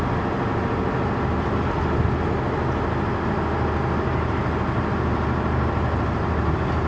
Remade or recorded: recorded